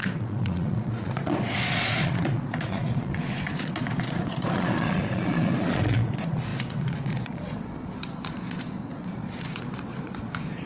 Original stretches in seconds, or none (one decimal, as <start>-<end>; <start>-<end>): none